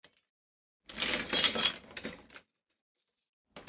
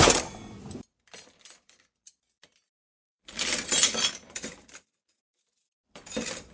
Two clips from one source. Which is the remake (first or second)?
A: second